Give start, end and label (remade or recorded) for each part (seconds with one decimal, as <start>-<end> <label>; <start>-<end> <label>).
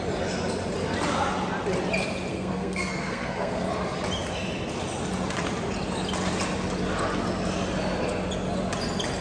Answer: 0.0-2.3 recorded; 2.3-3.7 remade; 3.7-9.2 recorded